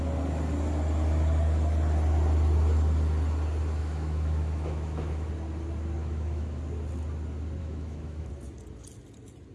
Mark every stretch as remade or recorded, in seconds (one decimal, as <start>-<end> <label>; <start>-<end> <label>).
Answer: 0.0-3.8 recorded; 3.8-5.3 remade; 5.3-6.0 recorded; 6.0-6.6 remade; 6.6-7.6 recorded; 7.6-8.3 remade; 8.3-9.5 recorded